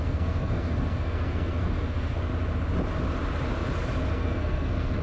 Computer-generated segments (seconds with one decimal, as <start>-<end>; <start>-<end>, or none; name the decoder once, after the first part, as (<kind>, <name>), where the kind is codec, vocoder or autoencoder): 0.0-2.3 (codec, SNAC); 4.1-5.0